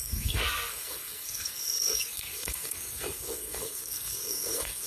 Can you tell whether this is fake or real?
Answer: fake